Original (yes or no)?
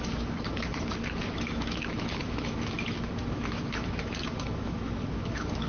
no